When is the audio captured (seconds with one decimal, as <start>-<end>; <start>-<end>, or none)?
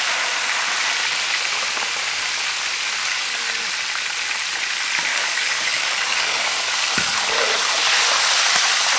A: 0.0-3.0; 3.6-5.1; 7.2-9.0